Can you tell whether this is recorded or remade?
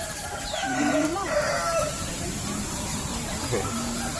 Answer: remade